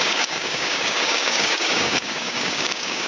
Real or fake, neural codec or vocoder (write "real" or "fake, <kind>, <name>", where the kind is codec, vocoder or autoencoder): fake, codec, DAC